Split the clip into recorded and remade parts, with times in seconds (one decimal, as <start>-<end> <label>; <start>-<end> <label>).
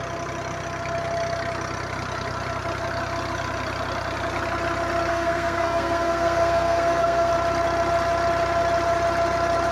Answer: 0.0-5.1 recorded; 5.1-7.3 remade; 7.3-9.7 recorded